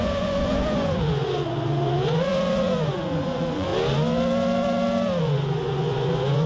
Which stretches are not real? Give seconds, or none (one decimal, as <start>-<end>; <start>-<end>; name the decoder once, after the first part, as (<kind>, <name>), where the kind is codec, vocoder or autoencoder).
0.0-3.7 (vocoder, Vocos); 5.2-6.5